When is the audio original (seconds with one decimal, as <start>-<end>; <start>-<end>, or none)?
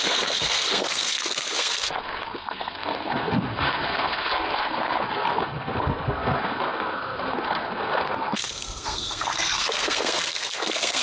none